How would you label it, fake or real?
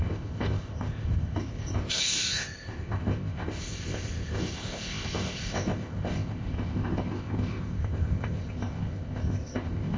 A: fake